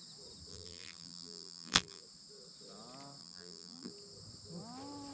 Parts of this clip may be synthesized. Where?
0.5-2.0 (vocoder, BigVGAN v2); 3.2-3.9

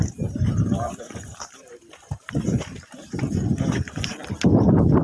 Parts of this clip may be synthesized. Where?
0.0-4.1 (vocoder, BigVGAN v2)

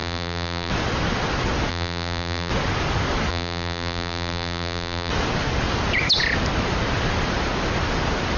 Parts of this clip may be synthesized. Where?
0.0-0.7 (vocoder, BigVGAN v2); 1.7-2.5; 3.3-5.1